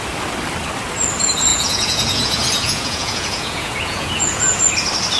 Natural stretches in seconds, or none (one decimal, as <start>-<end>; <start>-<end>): 0.0-1.5; 4.6-5.2